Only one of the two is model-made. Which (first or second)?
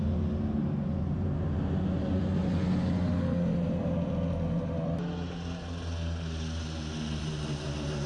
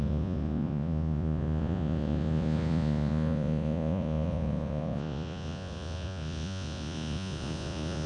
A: second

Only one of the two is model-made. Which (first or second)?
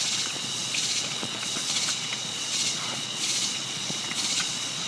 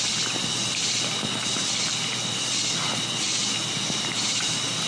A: first